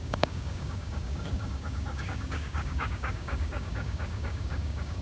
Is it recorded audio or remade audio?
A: remade